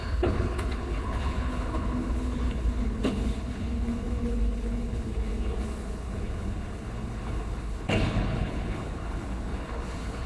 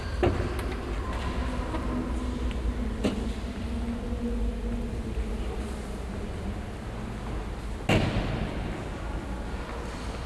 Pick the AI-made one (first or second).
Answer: first